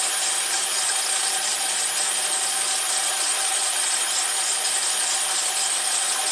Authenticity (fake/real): real